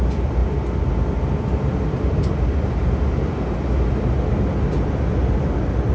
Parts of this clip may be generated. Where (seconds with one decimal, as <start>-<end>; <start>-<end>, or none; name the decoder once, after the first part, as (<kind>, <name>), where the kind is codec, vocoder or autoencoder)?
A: none